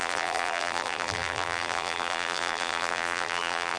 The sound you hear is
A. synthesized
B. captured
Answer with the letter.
A